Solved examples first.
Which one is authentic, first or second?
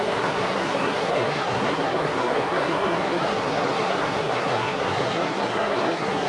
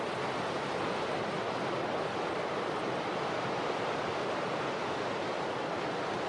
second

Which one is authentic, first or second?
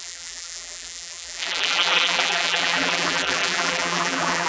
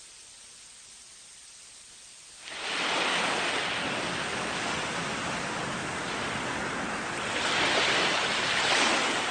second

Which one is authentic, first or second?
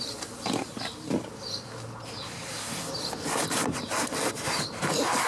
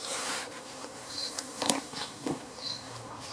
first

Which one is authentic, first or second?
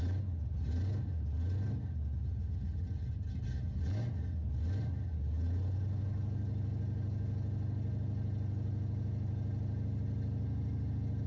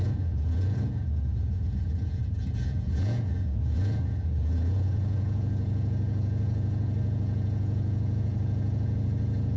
first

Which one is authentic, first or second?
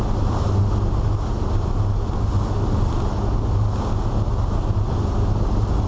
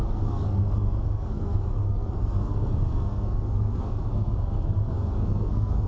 first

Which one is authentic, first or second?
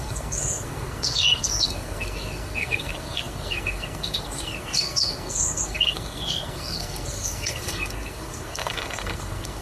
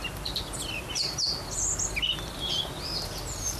second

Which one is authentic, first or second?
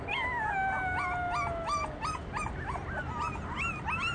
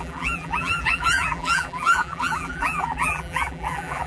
first